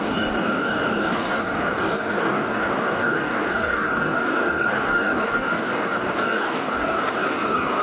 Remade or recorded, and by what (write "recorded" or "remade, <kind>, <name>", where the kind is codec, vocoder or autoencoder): remade, codec, DAC